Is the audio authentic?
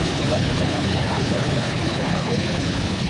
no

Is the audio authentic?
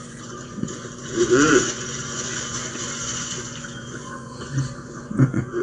no